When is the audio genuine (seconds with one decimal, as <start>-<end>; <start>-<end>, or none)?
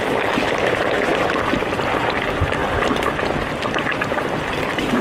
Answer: 0.0-5.0